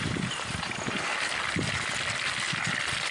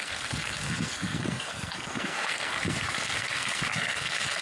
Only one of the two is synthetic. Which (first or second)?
second